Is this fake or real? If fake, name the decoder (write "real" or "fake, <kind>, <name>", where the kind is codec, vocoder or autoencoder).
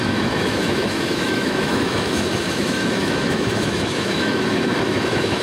fake, autoencoder, DAC-VAE